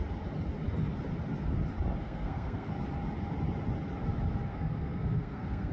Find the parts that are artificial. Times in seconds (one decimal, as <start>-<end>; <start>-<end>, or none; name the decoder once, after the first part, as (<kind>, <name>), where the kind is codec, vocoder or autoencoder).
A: 2.0-2.7 (codec, SNAC); 4.5-5.7